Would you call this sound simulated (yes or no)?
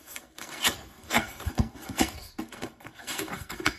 yes